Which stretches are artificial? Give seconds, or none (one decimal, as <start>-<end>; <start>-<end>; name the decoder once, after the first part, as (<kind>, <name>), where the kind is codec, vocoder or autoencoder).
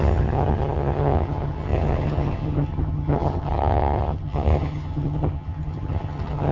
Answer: 0.0-6.5 (vocoder, HiFi-GAN)